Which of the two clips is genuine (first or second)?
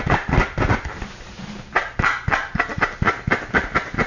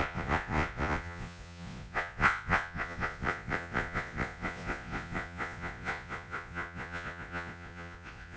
first